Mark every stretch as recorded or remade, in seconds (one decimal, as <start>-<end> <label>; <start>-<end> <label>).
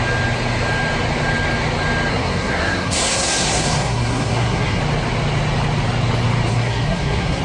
0.0-2.1 recorded; 2.1-4.8 remade; 4.8-6.5 recorded; 6.5-7.4 remade